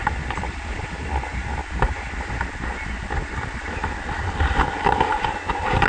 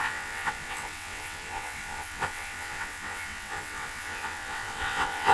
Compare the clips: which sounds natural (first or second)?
first